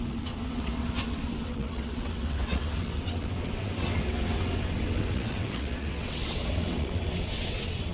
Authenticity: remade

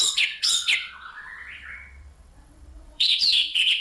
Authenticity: remade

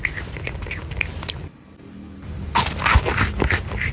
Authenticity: recorded